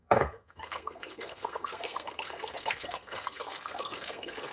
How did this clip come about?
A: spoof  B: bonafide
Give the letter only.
A